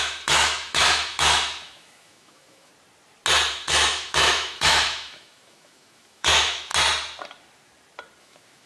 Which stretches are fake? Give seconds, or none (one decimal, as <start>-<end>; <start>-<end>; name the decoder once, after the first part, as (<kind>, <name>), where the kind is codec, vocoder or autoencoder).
0.0-2.7 (autoencoder, DAC-VAE); 3.5-6.7; 8.2-8.7